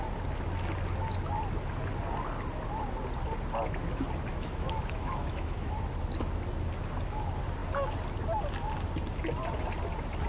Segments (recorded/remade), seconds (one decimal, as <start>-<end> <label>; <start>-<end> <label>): 0.0-4.3 recorded; 4.3-5.7 remade; 5.7-10.3 recorded